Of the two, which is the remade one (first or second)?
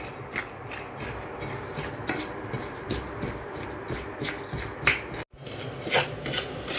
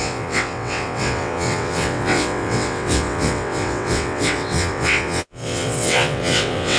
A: second